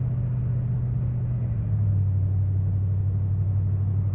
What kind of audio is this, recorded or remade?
recorded